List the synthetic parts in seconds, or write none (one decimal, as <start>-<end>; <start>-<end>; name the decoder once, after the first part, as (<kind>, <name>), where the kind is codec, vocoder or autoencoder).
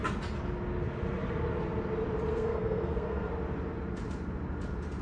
2.3-3.3 (codec, SNAC)